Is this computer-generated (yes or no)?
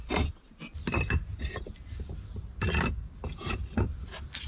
no